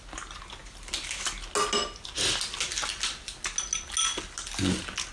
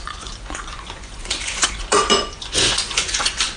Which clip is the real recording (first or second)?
first